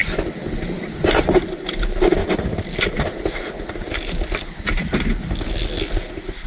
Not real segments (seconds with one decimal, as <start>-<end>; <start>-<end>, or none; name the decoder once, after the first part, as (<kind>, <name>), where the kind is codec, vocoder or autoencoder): 1.2-2.2 (vocoder, BigVGAN v2); 6.1-6.5